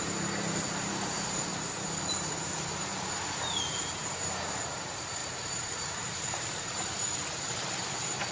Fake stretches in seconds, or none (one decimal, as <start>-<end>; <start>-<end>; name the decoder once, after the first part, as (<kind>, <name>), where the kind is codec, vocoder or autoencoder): 5.2-7.7 (vocoder, BigVGAN v2)